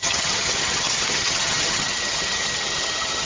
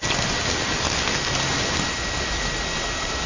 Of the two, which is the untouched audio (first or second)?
second